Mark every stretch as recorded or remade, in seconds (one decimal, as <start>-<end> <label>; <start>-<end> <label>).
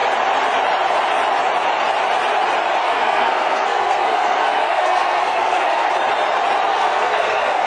0.0-2.8 recorded; 2.8-5.9 remade; 5.9-6.7 recorded; 6.7-7.7 remade